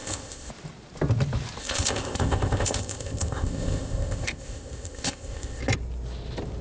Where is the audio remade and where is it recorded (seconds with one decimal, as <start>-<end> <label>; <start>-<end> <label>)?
0.0-0.5 remade; 0.5-1.6 recorded; 1.6-5.6 remade; 5.6-6.6 recorded